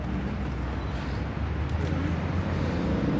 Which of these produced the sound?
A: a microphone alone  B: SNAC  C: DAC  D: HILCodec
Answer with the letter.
A